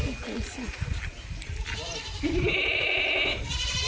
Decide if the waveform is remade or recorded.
recorded